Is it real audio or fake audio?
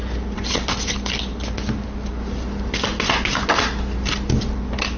real